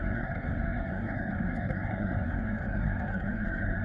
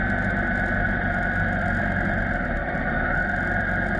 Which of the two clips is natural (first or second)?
second